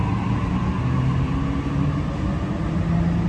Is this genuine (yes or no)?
yes